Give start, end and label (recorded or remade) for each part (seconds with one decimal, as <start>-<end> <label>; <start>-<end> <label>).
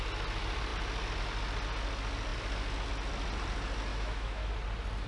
0.0-3.9 recorded; 3.9-4.5 remade; 4.5-5.1 recorded